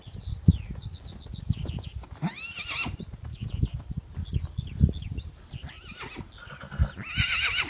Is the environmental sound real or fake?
real